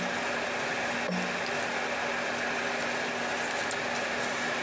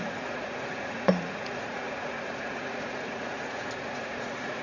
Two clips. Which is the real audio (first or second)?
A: first